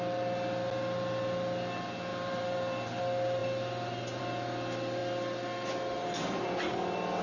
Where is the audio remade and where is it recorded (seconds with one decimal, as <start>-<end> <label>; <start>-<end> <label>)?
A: 0.0-2.1 recorded; 2.1-3.0 remade; 3.0-7.2 recorded

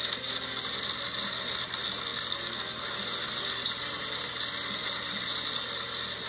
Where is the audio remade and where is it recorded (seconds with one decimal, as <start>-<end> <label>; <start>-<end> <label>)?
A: 0.0-6.3 recorded

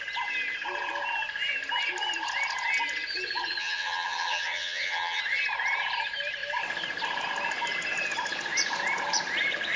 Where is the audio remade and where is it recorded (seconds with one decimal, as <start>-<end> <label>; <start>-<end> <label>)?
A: 0.0-3.6 recorded; 3.6-5.2 remade; 5.2-9.8 recorded

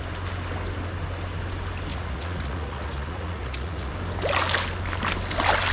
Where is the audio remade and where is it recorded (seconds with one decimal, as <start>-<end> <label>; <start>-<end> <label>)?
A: 0.0-1.9 recorded; 1.9-3.9 remade; 3.9-5.7 recorded

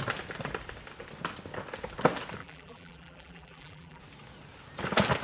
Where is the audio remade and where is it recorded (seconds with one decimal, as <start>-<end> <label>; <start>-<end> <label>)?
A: 0.0-2.4 recorded; 2.4-4.0 remade; 4.0-5.2 recorded